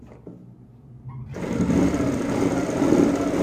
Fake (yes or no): no